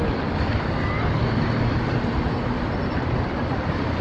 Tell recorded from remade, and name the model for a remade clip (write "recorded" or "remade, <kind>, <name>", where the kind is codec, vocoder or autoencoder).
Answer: recorded